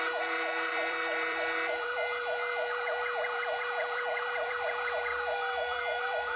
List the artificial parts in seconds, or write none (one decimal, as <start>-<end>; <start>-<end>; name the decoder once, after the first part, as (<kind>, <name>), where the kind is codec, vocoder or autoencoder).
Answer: 0.0-6.4 (vocoder, BigVGAN v2)